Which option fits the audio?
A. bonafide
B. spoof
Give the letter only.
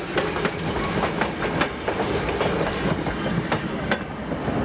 A